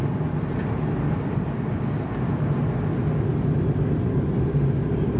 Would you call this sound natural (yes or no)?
yes